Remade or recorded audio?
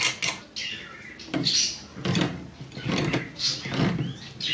recorded